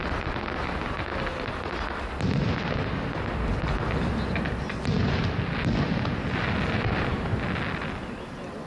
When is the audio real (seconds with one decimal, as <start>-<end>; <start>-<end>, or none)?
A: 0.0-8.7